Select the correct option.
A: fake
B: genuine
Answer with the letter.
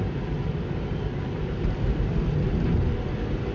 B